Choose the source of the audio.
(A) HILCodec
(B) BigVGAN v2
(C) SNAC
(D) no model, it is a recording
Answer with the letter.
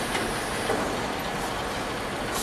D